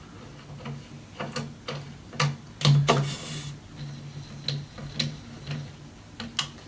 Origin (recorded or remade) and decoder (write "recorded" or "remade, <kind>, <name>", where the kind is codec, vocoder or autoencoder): recorded